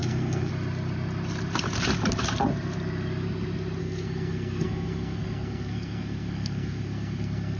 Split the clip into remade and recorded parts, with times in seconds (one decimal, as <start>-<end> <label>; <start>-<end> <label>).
0.0-0.5 remade; 0.5-3.8 recorded; 3.8-7.6 remade